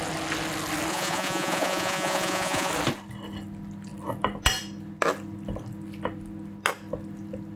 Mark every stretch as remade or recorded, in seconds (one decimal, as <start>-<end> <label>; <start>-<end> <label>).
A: 0.0-0.9 recorded; 0.9-2.7 remade; 2.7-7.6 recorded